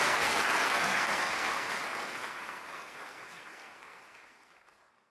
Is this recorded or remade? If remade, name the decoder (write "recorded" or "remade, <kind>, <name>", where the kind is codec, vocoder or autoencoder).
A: remade, codec, SNAC